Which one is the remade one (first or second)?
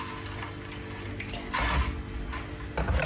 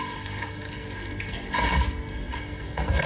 second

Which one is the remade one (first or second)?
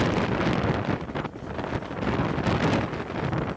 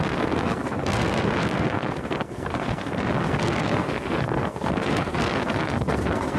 second